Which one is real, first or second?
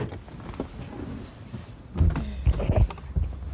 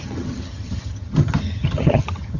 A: first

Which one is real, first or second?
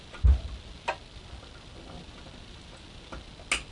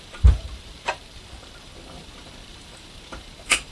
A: first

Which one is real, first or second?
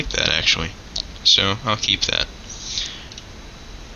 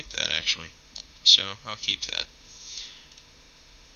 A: first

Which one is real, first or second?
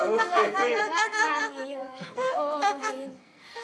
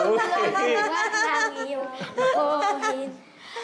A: second